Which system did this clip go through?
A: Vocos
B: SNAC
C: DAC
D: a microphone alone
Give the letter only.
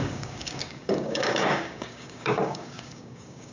C